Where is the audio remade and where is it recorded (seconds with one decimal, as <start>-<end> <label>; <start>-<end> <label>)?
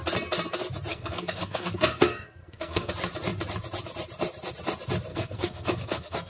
0.0-0.9 recorded; 0.9-2.9 remade; 2.9-5.1 recorded; 5.1-6.3 remade